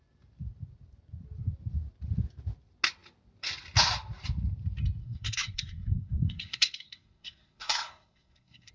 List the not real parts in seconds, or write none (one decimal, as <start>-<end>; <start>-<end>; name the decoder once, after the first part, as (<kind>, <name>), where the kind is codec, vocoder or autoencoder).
5.0-8.7 (codec, SNAC)